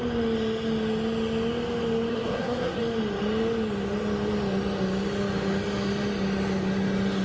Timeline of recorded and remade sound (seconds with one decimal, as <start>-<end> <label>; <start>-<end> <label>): 0.0-2.1 recorded; 2.1-2.8 remade; 2.8-7.2 recorded